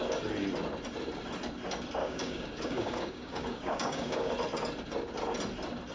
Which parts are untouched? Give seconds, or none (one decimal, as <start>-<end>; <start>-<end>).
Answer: 0.0-2.0; 4.3-5.9